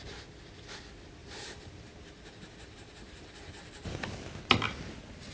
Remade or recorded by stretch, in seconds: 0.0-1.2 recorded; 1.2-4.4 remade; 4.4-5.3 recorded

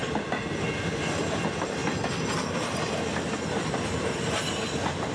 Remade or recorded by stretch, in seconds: 0.0-1.8 remade; 1.8-5.1 recorded

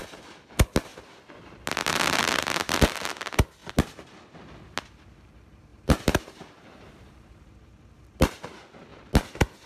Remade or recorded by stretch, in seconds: 0.0-5.7 recorded; 5.7-7.5 remade; 7.5-8.9 recorded; 8.9-9.7 remade

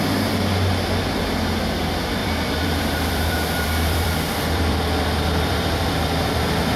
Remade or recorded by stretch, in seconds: 0.0-2.2 recorded; 2.2-6.3 remade; 6.3-6.8 recorded

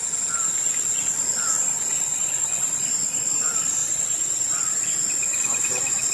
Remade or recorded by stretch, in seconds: 0.0-2.2 recorded; 2.2-6.1 remade